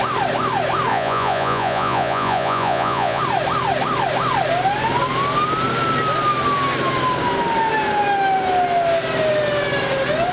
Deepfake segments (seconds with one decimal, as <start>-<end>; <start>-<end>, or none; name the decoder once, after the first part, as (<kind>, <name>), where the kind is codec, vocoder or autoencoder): 0.9-3.2 (vocoder, Vocos)